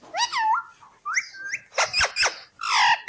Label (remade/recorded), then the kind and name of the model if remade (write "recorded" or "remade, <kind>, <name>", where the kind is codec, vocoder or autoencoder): recorded